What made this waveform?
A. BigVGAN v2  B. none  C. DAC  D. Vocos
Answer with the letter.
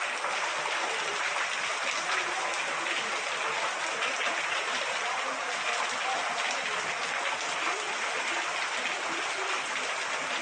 B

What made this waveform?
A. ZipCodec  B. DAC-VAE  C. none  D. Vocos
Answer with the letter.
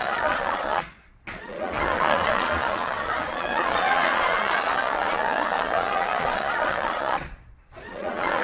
D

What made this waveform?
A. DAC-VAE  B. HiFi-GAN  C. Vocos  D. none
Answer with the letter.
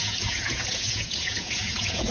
C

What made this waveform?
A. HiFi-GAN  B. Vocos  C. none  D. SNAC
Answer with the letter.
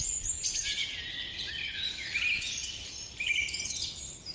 C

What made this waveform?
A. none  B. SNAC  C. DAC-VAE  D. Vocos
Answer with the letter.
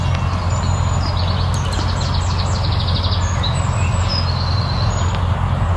A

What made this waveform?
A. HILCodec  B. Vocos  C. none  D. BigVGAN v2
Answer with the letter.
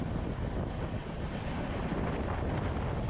C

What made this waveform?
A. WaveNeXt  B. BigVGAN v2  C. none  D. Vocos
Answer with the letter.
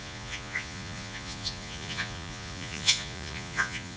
D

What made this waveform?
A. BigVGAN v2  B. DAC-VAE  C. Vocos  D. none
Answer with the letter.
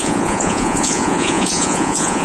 C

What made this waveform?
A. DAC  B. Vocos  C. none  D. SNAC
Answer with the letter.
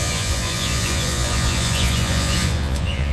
B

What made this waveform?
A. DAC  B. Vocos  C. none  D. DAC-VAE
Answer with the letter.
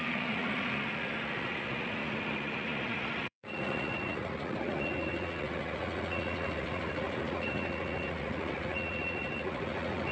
B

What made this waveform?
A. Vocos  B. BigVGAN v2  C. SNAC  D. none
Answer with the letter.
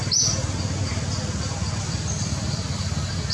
D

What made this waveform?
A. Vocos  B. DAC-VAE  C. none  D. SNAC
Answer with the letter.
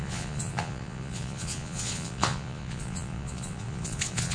A